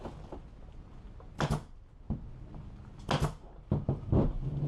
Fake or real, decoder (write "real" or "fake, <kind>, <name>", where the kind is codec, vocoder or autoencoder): real